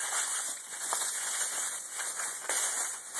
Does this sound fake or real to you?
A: fake